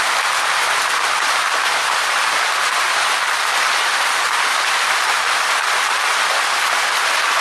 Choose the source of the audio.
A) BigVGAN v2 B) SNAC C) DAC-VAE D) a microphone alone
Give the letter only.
A